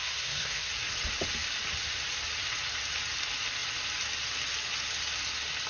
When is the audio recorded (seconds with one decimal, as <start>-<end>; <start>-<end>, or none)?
0.7-5.7